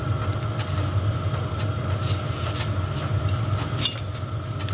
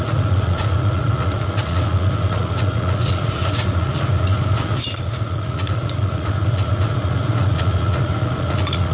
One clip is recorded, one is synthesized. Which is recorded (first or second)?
first